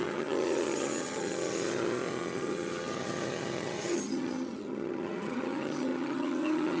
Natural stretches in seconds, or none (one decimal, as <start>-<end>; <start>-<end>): none